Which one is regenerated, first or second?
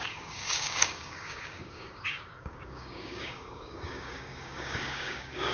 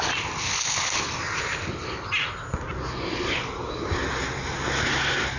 first